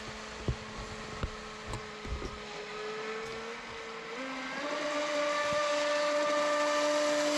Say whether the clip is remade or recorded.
recorded